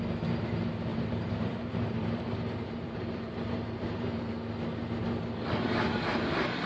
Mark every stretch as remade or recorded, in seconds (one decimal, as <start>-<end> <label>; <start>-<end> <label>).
0.0-0.9 recorded; 0.9-4.2 remade; 4.2-6.7 recorded